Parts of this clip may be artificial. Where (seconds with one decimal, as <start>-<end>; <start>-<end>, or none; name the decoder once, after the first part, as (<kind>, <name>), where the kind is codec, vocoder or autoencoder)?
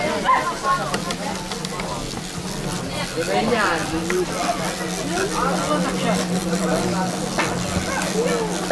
none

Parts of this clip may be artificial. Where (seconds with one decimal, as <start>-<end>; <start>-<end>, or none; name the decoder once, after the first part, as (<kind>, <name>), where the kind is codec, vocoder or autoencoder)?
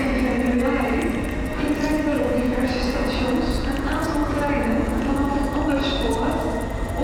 2.1-5.6 (vocoder, Vocos)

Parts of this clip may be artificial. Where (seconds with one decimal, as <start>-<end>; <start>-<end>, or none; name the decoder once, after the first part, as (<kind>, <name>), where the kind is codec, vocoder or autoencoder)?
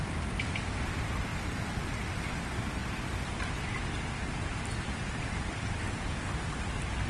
none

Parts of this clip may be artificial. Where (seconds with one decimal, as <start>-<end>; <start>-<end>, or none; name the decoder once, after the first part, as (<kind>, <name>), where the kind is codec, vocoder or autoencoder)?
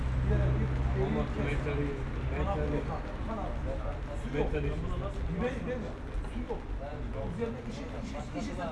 none